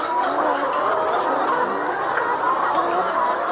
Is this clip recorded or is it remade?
recorded